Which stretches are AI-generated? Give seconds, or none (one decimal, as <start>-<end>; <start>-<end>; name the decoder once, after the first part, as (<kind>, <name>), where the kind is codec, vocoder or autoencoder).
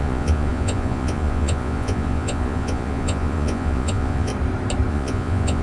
0.0-4.3 (vocoder, Vocos); 4.9-5.6